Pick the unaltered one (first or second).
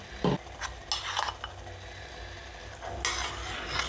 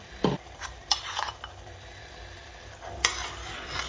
first